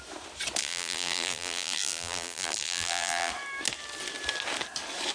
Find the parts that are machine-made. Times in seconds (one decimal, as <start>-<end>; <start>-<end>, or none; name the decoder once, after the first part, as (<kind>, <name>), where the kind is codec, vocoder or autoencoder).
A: 0.6-3.3 (vocoder, BigVGAN v2)